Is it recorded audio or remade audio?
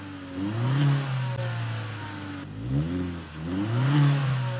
recorded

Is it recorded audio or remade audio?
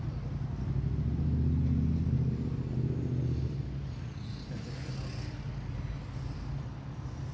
recorded